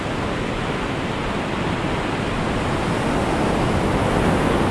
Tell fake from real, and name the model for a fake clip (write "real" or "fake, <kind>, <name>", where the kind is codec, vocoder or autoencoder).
real